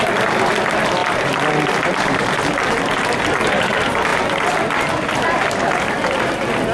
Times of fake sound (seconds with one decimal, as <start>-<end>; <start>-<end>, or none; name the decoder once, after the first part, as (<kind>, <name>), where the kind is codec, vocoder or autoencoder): none